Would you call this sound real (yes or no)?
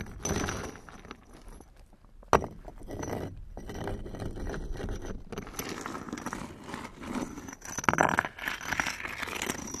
yes